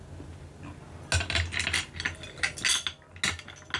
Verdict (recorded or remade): recorded